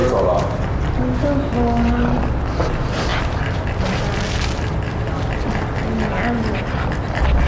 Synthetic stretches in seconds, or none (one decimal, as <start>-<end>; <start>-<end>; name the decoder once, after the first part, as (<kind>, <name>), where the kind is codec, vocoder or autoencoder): none